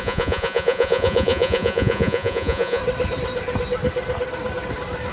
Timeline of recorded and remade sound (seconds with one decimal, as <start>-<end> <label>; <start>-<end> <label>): 0.0-2.8 remade; 2.8-5.1 recorded